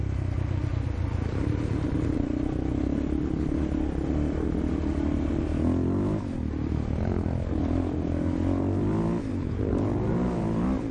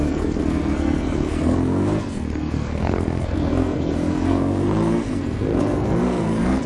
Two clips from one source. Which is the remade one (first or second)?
second